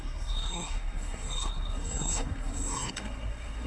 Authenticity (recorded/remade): remade